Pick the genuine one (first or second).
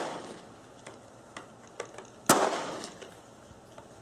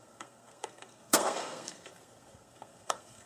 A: first